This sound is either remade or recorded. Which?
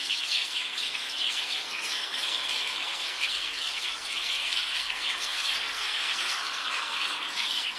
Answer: remade